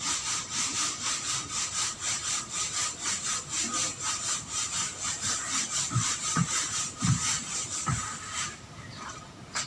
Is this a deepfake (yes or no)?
yes